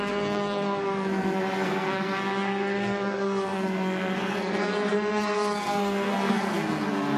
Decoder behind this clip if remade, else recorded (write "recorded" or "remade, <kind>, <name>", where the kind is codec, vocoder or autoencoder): remade, codec, SNAC